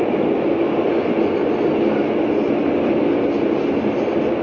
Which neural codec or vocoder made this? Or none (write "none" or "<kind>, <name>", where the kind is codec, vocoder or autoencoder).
none